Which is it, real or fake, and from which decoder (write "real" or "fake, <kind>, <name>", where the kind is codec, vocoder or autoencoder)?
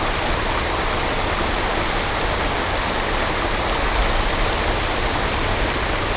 real